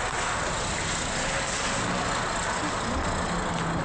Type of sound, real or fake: real